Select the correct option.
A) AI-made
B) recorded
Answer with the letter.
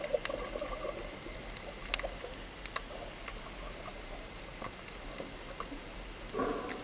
B